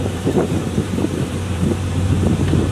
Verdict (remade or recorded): remade